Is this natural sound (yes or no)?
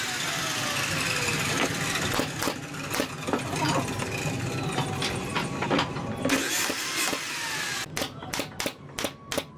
yes